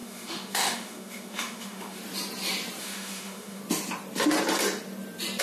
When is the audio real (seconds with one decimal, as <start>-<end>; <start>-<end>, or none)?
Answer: 2.0-2.8; 3.6-5.4

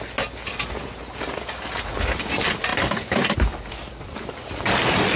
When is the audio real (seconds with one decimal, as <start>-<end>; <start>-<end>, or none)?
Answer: 0.0-5.2

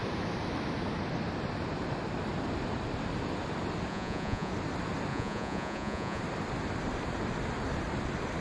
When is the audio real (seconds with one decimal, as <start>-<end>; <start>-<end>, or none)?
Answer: 0.0-3.9; 4.5-5.1; 6.2-8.4